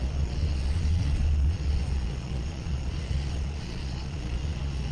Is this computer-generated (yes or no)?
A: yes